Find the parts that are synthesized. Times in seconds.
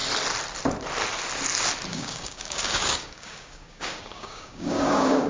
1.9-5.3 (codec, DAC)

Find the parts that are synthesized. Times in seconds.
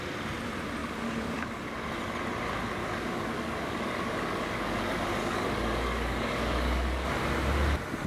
0.8-1.8 (codec, DAC); 2.8-7.1